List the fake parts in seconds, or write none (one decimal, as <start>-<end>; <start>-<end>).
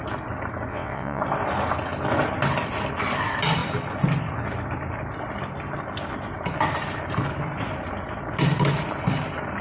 0.7-1.2